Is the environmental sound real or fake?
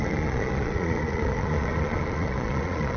fake